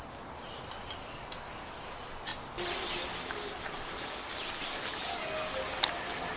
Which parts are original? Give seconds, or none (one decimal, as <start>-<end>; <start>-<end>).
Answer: 0.0-1.0; 1.7-6.4